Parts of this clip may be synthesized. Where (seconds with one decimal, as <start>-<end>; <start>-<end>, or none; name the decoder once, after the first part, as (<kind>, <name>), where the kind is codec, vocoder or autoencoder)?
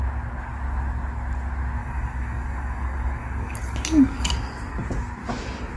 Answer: 1.8-4.3 (codec, DAC)